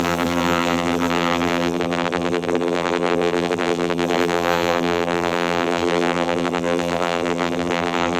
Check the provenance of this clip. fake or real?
fake